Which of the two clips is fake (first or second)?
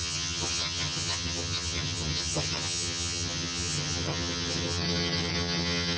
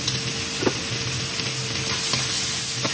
first